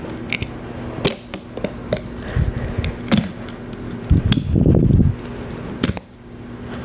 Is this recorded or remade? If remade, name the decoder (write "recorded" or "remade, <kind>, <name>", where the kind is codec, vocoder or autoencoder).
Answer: recorded